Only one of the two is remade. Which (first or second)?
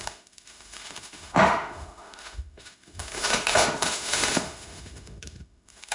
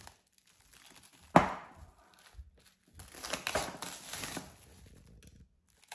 first